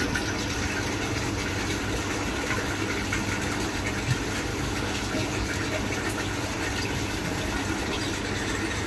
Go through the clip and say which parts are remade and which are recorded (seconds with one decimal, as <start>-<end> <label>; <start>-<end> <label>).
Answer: 0.0-4.5 recorded; 4.5-5.0 remade; 5.0-8.9 recorded